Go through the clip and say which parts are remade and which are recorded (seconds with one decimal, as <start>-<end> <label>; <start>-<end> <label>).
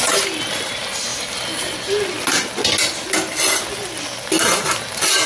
0.0-5.3 recorded